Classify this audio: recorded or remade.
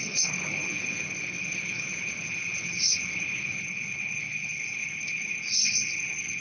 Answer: remade